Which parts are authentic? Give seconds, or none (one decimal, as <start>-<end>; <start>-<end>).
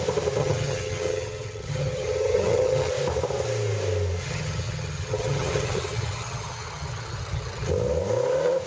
0.0-0.4; 2.9-4.2; 7.7-8.7